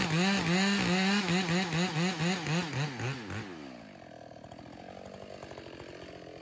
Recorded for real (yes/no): yes